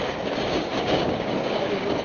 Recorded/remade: remade